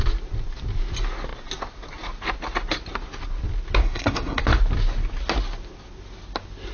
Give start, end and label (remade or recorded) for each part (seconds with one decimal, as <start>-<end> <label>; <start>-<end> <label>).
0.0-3.8 recorded; 3.8-4.4 remade; 4.4-6.7 recorded

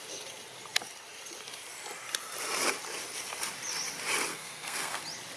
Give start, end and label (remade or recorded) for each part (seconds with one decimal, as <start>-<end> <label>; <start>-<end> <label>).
0.0-4.3 recorded; 4.3-5.0 remade; 5.0-5.4 recorded

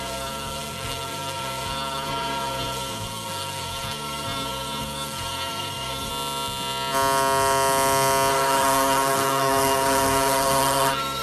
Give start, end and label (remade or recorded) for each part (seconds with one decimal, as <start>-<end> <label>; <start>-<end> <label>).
0.0-6.1 remade; 6.1-8.3 recorded; 8.3-11.2 remade

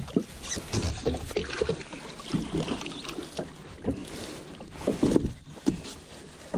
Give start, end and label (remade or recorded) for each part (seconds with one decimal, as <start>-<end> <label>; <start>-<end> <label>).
0.0-6.6 recorded

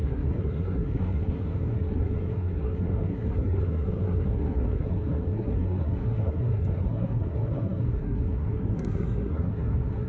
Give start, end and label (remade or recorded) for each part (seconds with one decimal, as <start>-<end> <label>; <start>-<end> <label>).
0.0-10.1 remade